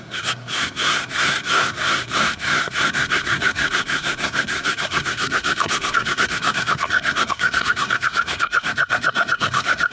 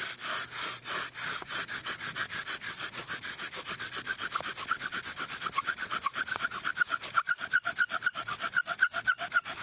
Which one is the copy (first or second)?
first